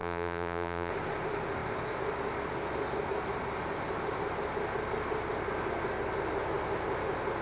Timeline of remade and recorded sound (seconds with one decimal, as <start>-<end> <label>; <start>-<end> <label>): 0.0-0.9 remade; 0.9-7.4 recorded